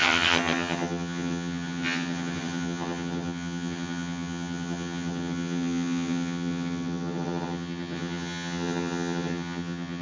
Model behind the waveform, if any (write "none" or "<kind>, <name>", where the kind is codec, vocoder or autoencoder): vocoder, HiFi-GAN